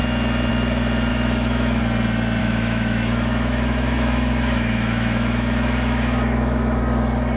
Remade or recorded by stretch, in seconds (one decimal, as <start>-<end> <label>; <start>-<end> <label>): 0.0-1.1 recorded; 1.1-1.8 remade; 1.8-2.4 recorded; 2.4-6.8 remade; 6.8-7.4 recorded